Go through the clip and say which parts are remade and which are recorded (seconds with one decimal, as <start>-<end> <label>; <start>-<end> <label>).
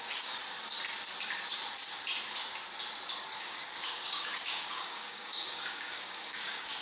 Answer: 0.0-0.4 remade; 0.4-3.4 recorded; 3.4-6.8 remade